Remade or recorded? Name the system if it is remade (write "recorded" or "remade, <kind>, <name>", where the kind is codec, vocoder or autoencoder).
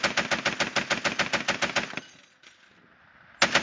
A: recorded